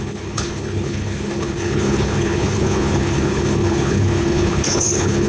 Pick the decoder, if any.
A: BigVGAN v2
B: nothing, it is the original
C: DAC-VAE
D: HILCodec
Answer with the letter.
D